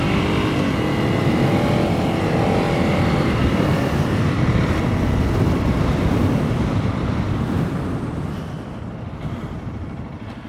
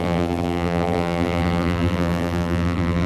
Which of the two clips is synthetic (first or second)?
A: second